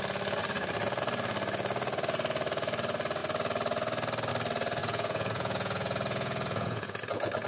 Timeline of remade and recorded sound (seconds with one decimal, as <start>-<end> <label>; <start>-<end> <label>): 0.0-4.8 recorded; 4.8-6.9 remade; 6.9-7.5 recorded